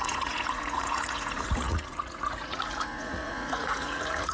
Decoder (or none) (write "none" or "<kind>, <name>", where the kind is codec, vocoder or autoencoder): vocoder, Vocos